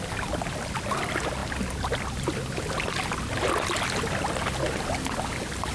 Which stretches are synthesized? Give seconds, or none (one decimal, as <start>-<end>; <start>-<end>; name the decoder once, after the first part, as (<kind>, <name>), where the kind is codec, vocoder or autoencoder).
none

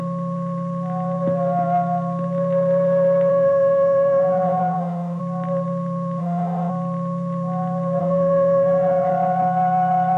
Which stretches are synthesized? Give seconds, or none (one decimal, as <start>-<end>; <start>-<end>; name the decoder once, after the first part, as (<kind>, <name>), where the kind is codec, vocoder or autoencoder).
3.3-5.2 (autoencoder, DAC-VAE); 6.2-6.7; 8.0-9.1

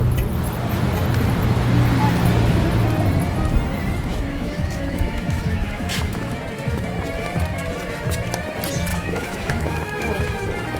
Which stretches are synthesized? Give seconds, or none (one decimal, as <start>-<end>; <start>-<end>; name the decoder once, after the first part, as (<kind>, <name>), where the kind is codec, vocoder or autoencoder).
4.1-6.4 (autoencoder, DAC-VAE); 8.9-10.2

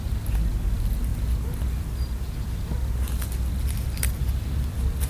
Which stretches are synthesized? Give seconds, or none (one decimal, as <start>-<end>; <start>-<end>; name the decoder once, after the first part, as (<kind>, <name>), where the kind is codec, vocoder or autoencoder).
none

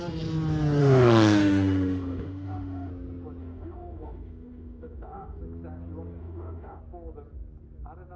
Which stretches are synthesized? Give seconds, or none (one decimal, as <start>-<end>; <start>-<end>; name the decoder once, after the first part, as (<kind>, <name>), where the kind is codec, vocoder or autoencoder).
0.8-2.9 (autoencoder, DAC-VAE); 3.4-5.4; 6.2-6.8

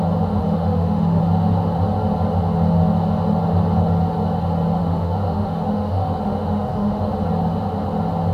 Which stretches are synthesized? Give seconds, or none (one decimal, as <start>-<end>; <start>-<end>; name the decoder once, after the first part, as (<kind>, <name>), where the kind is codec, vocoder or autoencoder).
0.4-1.2 (autoencoder, DAC-VAE); 4.8-7.1